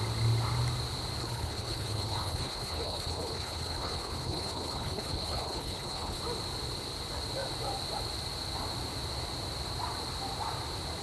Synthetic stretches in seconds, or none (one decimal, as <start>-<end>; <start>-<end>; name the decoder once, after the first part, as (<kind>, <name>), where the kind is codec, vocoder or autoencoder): 1.2-6.2 (codec, HILCodec)